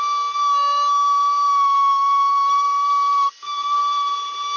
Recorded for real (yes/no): yes